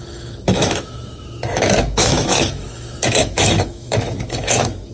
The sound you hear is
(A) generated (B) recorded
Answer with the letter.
A